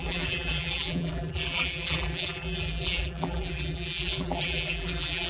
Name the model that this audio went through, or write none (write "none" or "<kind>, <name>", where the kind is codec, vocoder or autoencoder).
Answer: vocoder, BigVGAN v2